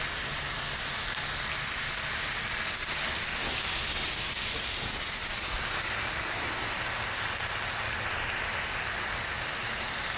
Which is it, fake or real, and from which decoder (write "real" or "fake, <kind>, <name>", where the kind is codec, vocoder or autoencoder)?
real